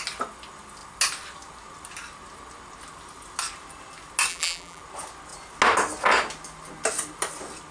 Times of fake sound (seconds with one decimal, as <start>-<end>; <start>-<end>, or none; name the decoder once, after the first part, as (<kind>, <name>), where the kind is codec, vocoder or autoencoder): 4.3-4.8 (vocoder, BigVGAN v2)